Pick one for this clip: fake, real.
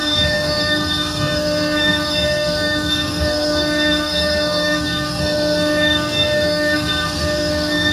fake